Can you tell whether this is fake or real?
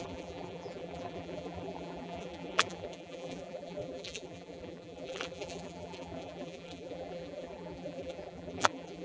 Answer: fake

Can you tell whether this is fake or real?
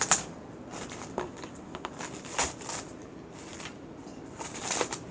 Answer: fake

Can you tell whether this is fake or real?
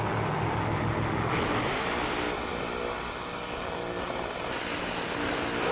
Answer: real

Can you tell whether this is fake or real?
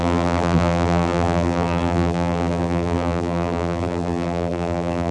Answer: fake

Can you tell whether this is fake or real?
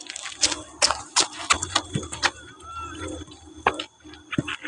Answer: real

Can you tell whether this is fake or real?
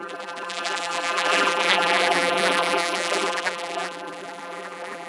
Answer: fake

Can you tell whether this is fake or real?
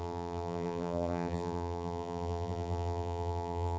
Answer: fake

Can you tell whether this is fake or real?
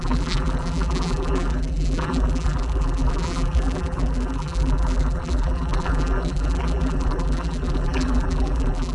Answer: fake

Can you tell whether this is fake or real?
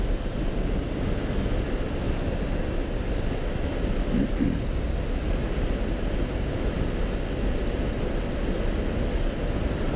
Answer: real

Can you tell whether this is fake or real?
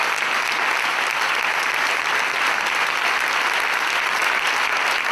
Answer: real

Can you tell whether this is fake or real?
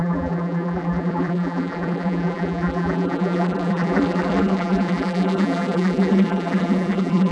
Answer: fake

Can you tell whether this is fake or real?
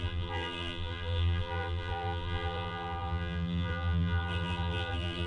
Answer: fake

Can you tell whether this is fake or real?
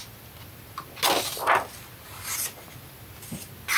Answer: real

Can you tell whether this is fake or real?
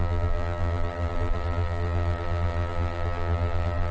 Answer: fake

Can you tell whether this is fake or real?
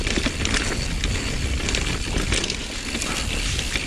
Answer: real